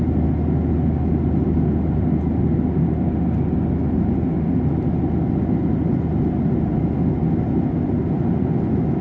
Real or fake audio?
real